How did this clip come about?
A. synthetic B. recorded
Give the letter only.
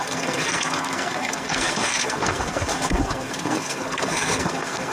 A